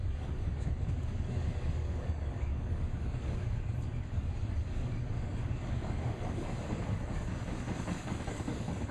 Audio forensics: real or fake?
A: fake